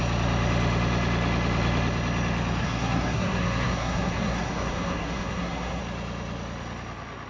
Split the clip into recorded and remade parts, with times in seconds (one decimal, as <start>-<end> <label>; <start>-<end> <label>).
0.0-2.6 recorded; 2.6-5.8 remade; 5.8-7.3 recorded